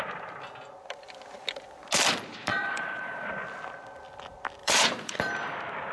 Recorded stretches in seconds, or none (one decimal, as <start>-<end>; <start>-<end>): 0.0-2.5; 3.3-4.6; 5.2-5.9